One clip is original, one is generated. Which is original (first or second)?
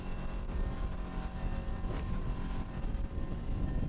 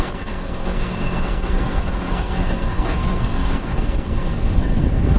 first